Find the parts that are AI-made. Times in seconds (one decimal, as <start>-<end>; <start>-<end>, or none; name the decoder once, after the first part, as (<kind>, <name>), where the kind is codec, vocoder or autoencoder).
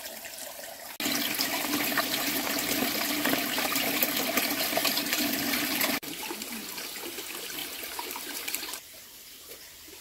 4.8-5.4 (vocoder, BigVGAN v2); 7.6-9.5